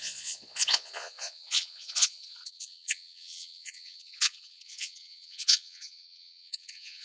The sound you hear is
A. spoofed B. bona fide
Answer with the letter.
A